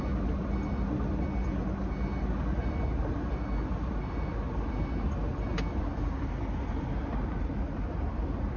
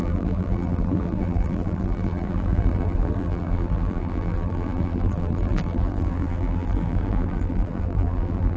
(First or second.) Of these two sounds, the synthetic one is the second